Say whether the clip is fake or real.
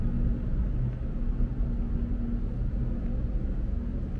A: real